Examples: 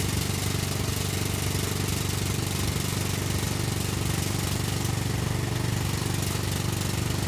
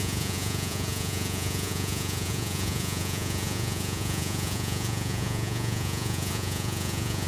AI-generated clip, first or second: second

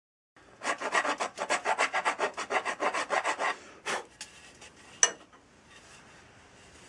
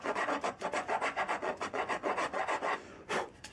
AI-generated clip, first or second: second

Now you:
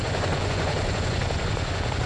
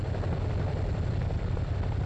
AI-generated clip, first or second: first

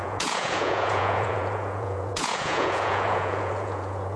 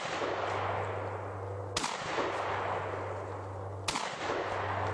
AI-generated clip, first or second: first